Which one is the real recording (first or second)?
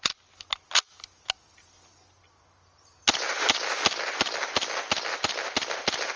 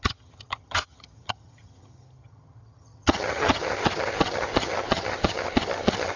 first